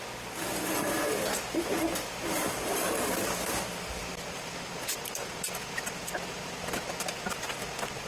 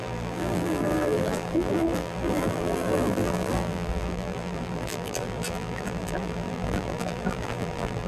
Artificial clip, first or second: second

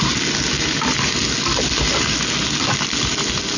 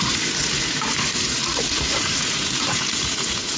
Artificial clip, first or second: second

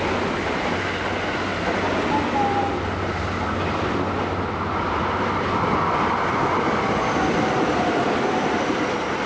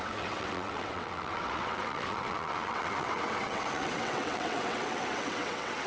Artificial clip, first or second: second